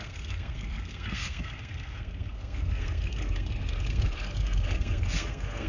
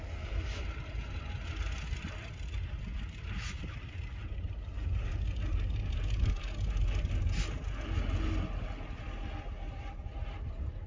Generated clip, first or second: first